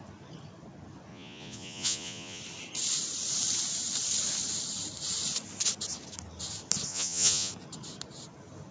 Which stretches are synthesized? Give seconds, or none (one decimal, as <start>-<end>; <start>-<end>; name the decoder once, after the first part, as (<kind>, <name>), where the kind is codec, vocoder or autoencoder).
1.1-2.4 (vocoder, Vocos); 6.9-7.5